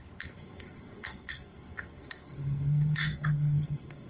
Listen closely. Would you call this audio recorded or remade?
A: remade